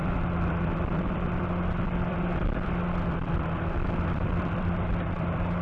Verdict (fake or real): fake